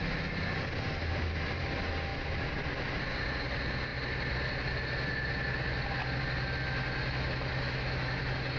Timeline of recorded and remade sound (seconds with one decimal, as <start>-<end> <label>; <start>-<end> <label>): 0.0-7.5 recorded; 7.5-8.2 remade; 8.2-8.6 recorded